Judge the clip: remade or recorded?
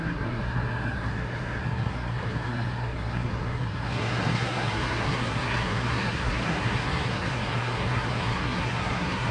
remade